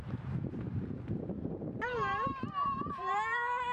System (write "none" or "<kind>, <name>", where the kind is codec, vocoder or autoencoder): vocoder, BigVGAN v2